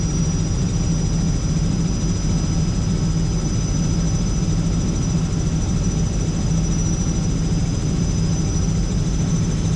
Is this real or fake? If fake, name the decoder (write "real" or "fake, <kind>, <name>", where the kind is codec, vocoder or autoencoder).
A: real